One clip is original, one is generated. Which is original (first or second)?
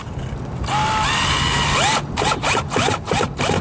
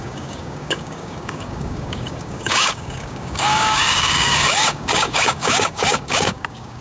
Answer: first